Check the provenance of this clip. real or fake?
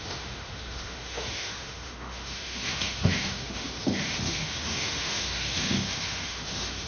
fake